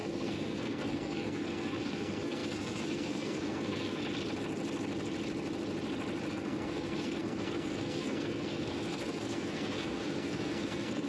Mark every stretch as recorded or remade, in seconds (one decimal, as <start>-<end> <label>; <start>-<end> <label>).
0.0-4.0 remade; 4.0-6.3 recorded; 6.3-11.1 remade